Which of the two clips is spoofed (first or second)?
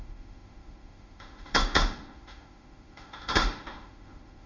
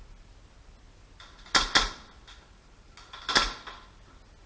first